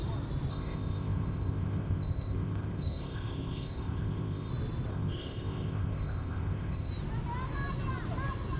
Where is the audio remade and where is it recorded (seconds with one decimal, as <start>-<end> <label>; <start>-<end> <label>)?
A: 0.0-0.5 recorded; 0.5-4.5 remade; 4.5-4.9 recorded; 4.9-6.9 remade; 6.9-8.6 recorded